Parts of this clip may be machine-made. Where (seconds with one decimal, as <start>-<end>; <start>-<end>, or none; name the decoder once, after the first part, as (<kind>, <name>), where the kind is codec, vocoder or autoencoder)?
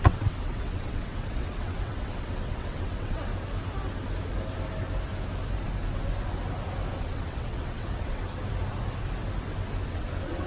0.0-3.3 (vocoder, WaveNeXt); 7.0-8.2; 9.9-10.5